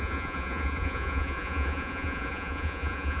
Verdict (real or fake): fake